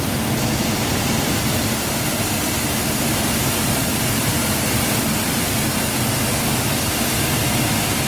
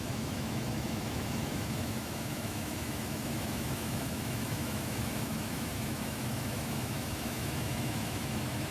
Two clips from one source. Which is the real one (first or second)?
first